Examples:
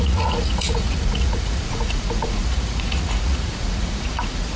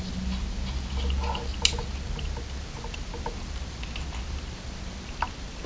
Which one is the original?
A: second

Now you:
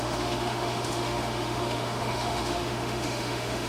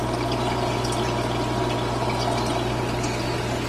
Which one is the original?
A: second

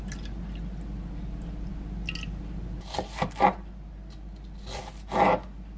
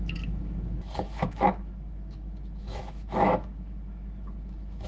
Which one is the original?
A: first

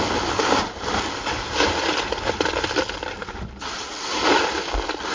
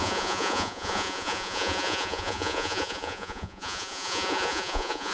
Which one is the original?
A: first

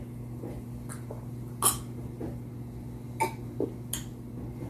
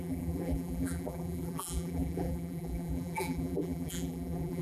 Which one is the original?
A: first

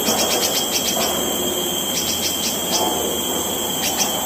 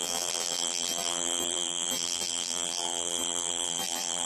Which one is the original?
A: first